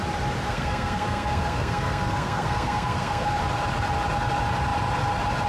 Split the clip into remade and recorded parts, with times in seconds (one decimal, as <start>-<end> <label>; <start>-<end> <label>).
0.0-0.5 recorded; 0.5-3.4 remade; 3.4-5.5 recorded